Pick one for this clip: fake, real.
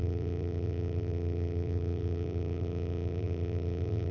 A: fake